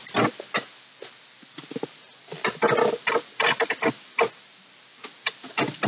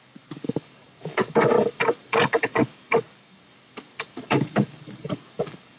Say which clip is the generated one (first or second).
second